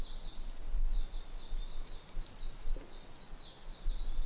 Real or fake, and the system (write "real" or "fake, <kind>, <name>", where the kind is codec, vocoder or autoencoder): real